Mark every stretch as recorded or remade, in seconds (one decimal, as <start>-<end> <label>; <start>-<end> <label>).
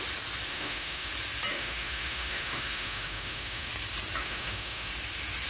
0.0-0.5 recorded; 0.5-1.1 remade; 1.1-1.5 recorded; 1.5-3.7 remade; 3.7-4.2 recorded; 4.2-4.9 remade; 4.9-5.5 recorded